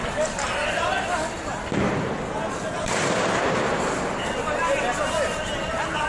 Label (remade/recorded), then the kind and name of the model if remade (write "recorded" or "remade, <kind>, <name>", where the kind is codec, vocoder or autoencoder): recorded